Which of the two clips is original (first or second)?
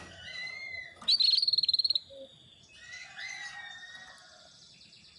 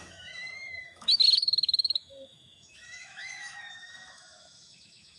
first